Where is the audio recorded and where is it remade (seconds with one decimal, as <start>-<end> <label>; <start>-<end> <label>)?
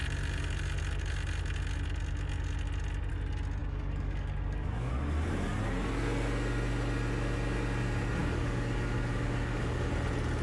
0.0-3.6 recorded; 3.6-4.9 remade; 4.9-8.2 recorded; 8.2-9.9 remade; 9.9-10.4 recorded